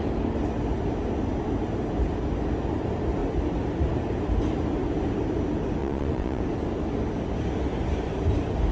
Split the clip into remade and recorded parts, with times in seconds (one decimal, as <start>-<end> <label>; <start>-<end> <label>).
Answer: 0.0-5.8 recorded; 5.8-6.4 remade; 6.4-8.7 recorded